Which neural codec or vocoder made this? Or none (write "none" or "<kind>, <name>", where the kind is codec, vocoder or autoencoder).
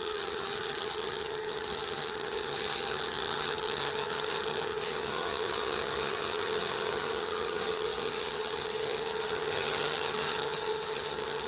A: vocoder, HiFi-GAN